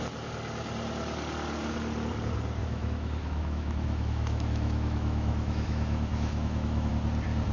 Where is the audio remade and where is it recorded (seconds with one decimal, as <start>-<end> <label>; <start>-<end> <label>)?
0.0-2.6 recorded; 2.6-6.9 remade; 6.9-7.5 recorded